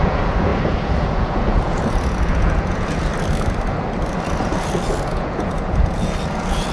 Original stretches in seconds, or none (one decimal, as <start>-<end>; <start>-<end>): 3.1-4.4